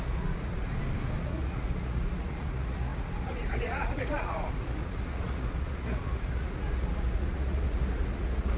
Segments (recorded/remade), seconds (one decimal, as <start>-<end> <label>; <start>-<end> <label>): 0.0-0.7 remade; 0.7-1.2 recorded; 1.2-8.6 remade